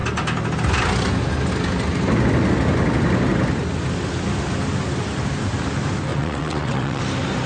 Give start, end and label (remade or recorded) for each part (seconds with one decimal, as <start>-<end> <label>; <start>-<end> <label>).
0.0-6.1 recorded; 6.1-7.0 remade; 7.0-7.5 recorded